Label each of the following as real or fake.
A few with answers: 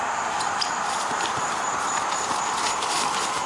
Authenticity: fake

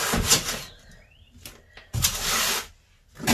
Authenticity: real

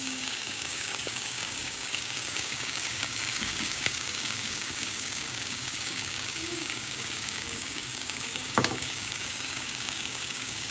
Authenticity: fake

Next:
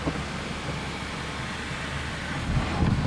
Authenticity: real